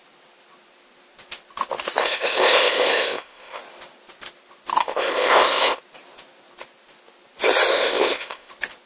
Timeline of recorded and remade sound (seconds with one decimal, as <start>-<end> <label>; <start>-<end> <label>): 0.0-2.0 recorded; 2.0-3.6 remade; 3.6-4.8 recorded; 4.8-5.8 remade; 5.8-7.7 recorded; 7.7-8.5 remade; 8.5-8.9 recorded